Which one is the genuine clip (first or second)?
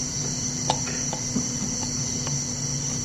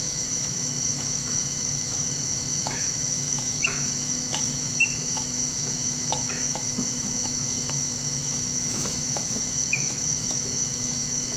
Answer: first